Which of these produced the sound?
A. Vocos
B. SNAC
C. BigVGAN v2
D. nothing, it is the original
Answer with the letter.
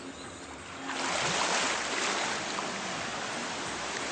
D